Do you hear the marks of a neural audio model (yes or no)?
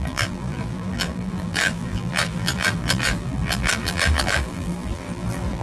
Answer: yes